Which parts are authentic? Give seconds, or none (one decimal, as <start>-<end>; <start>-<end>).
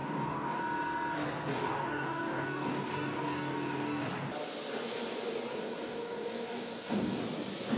0.6-1.5; 4.0-5.5; 7.2-7.8